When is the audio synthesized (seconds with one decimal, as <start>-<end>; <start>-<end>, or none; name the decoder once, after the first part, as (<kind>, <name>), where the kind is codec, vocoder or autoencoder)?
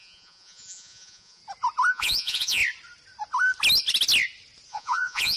0.0-1.4 (vocoder, Vocos); 1.9-2.6; 4.7-5.4